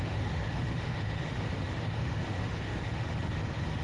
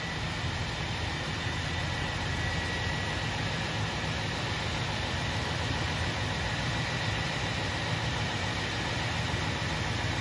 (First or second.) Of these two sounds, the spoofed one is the first